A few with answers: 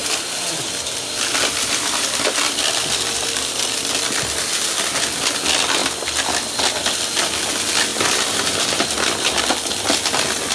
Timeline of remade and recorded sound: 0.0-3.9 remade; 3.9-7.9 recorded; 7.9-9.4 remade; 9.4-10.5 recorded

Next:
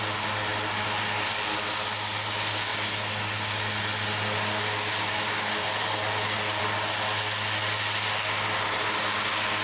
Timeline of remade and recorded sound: 0.0-9.6 recorded

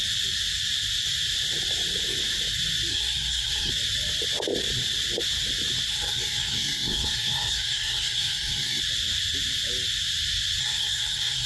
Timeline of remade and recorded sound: 0.0-2.9 recorded; 2.9-3.7 remade; 3.7-5.9 recorded; 5.9-8.8 remade; 8.8-10.6 recorded; 10.6-11.5 remade

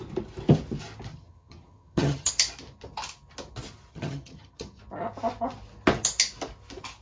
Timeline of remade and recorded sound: 0.0-1.1 recorded; 1.1-2.3 remade; 2.3-3.9 recorded; 3.9-4.8 remade; 4.8-7.0 recorded

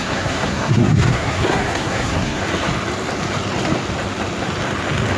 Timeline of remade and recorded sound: 0.0-2.4 remade; 2.4-5.2 recorded